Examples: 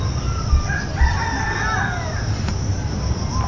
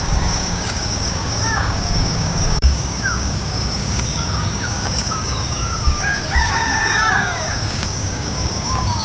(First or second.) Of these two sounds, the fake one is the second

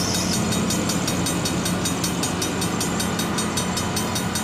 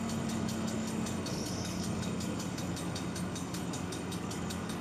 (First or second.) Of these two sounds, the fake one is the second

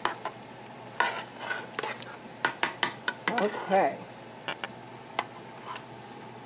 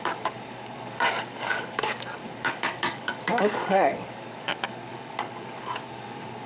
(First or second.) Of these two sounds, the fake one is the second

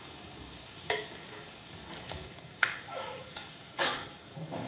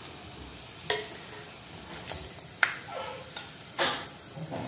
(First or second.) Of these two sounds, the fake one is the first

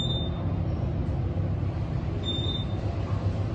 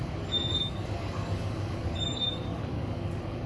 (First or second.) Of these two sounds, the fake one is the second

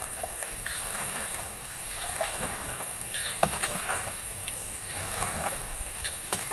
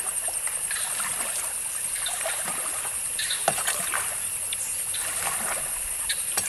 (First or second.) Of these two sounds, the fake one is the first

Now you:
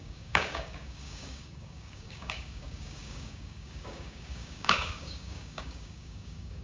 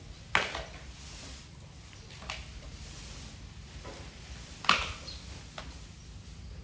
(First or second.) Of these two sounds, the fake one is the first